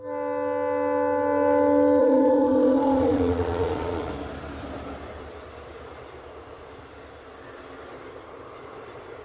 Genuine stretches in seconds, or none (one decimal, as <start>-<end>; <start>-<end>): 0.0-2.0; 4.1-9.2